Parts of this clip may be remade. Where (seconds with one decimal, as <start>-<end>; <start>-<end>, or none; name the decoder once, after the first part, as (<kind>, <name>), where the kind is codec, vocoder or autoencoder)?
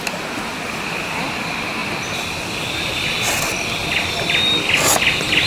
none